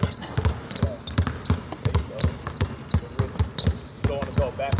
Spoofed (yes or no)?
no